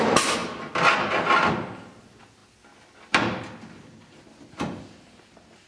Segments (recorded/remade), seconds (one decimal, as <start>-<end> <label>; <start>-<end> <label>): 0.0-5.7 recorded